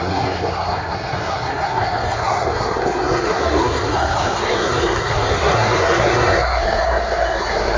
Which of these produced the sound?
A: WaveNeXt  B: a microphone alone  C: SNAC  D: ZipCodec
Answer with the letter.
C